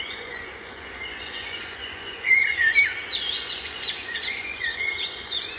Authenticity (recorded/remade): remade